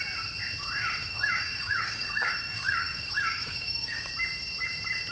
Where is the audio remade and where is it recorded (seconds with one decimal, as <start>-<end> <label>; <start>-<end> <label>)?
0.0-1.0 recorded; 1.0-4.1 remade; 4.1-5.1 recorded